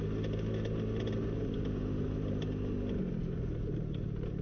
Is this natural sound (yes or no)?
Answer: yes